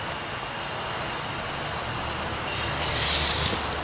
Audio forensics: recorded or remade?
remade